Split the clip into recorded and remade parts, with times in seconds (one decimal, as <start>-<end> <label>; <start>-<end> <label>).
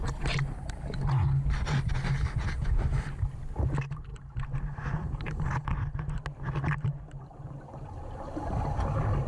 0.0-9.3 recorded